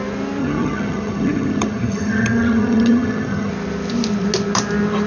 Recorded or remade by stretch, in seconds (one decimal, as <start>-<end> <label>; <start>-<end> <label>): 0.0-0.4 recorded; 0.4-3.5 remade; 3.5-5.1 recorded